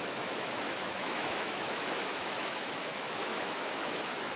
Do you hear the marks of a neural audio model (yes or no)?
yes